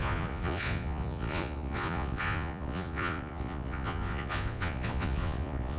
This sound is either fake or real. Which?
fake